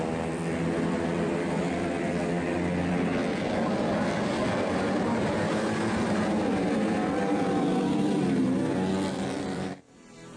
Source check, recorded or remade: remade